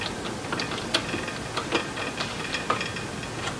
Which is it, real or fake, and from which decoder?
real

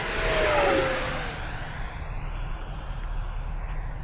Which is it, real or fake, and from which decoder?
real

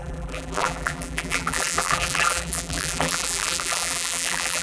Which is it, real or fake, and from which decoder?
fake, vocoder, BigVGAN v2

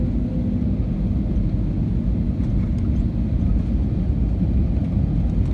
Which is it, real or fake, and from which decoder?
real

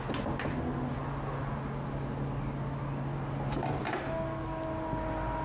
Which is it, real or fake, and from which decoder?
real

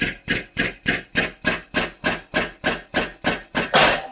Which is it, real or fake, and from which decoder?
real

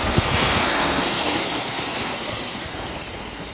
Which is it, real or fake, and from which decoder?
fake, codec, SNAC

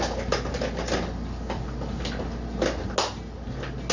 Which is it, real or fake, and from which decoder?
real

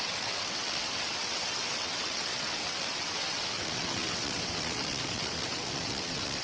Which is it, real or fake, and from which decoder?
fake, vocoder, WaveNeXt